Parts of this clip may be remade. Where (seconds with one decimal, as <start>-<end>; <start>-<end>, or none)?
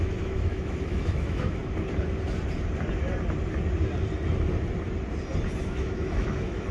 0.0-1.6; 5.6-6.7